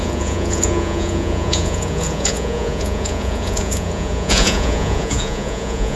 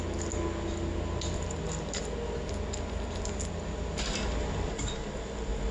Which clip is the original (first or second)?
second